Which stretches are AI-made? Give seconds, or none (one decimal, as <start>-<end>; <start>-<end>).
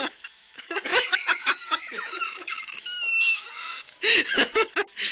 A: 0.0-5.1